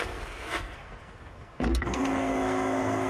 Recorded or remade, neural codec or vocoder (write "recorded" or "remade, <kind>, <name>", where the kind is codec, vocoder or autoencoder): remade, codec, SNAC